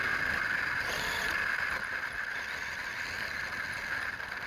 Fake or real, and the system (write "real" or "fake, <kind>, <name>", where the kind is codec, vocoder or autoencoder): real